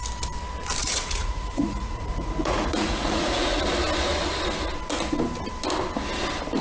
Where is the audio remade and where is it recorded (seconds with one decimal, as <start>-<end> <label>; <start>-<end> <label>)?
0.0-0.8 recorded; 0.8-3.6 remade; 3.6-6.6 recorded